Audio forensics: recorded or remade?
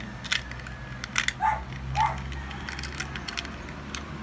recorded